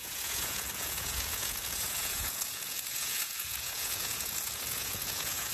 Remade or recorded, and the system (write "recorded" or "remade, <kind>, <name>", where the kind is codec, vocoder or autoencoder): remade, vocoder, Vocos